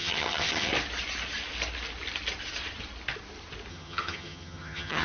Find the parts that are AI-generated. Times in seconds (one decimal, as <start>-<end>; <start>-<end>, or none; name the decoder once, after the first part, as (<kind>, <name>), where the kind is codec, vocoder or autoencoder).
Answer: 0.0-0.7 (vocoder, HiFi-GAN); 3.7-5.0